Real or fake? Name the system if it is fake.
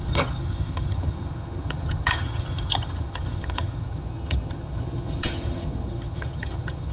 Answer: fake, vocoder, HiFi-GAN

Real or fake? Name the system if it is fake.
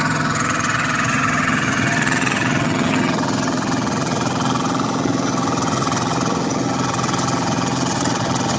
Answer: fake, vocoder, HiFi-GAN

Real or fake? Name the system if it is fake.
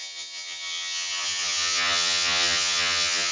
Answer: fake, vocoder, HiFi-GAN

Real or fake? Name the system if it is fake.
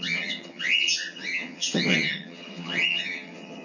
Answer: fake, vocoder, HiFi-GAN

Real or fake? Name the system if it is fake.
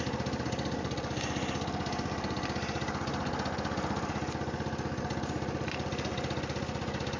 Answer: real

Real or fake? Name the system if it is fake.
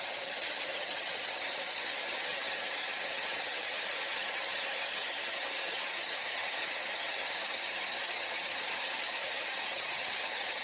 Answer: fake, vocoder, HiFi-GAN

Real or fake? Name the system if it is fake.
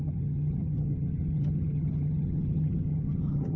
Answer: fake, vocoder, HiFi-GAN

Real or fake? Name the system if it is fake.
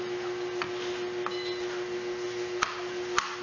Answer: real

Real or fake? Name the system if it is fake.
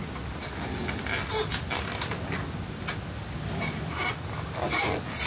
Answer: real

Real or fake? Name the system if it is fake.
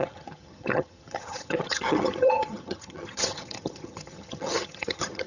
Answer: fake, vocoder, HiFi-GAN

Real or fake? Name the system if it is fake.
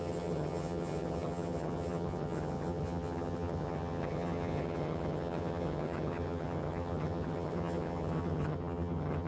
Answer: fake, vocoder, HiFi-GAN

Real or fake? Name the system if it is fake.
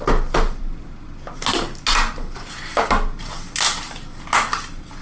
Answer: real